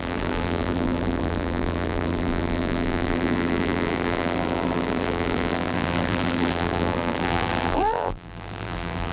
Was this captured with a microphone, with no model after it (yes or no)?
no